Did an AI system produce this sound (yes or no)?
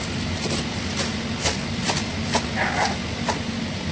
no